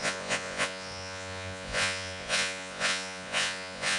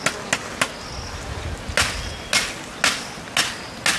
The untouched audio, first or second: second